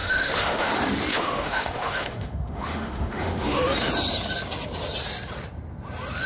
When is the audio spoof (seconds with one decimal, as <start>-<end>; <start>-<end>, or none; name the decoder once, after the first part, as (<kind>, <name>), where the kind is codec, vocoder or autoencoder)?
0.0-0.7 (autoencoder, DAC-VAE); 1.1-3.6